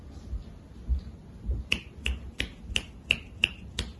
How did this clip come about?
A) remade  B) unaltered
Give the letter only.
B